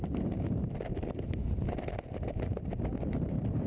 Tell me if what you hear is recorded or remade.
recorded